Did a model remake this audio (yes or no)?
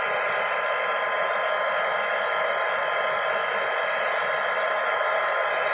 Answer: no